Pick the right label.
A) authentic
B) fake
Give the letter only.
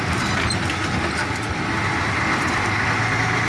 A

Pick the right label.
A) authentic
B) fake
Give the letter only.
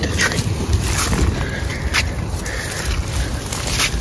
A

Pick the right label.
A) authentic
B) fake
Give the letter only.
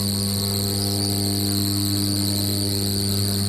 A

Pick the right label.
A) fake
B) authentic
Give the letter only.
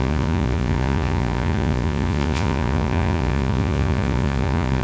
A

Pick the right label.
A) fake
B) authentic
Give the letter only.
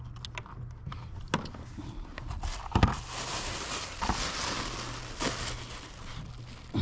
B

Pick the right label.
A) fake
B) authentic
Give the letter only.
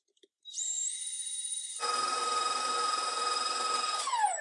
A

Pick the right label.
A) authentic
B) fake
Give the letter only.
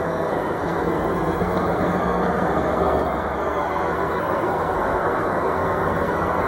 B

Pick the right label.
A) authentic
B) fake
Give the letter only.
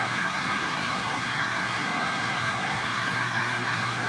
B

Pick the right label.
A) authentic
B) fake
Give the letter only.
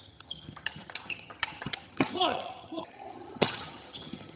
B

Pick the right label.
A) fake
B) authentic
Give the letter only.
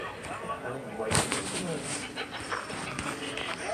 B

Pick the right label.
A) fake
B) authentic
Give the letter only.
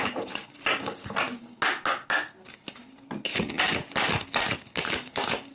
B